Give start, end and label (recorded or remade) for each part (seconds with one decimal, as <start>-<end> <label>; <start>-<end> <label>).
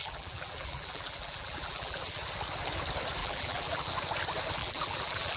0.0-2.2 remade; 2.2-3.2 recorded; 3.2-3.9 remade; 3.9-4.6 recorded; 4.6-5.4 remade